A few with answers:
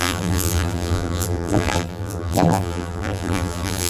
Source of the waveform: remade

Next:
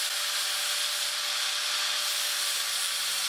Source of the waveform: recorded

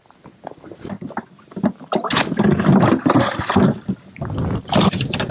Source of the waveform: recorded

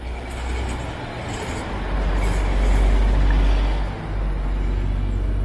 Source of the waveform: recorded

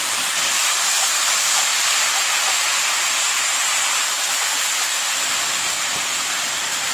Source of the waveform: remade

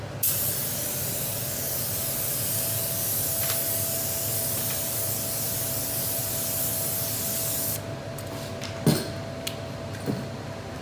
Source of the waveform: recorded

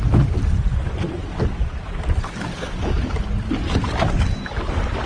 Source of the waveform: recorded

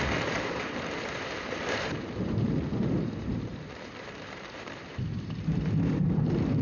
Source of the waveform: remade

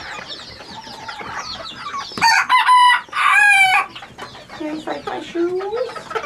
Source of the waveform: recorded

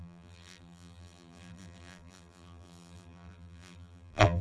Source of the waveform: remade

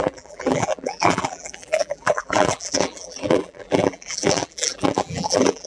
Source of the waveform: remade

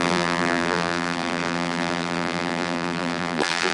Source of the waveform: remade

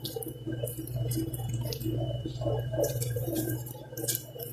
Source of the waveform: remade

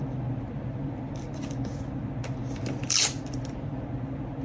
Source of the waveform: recorded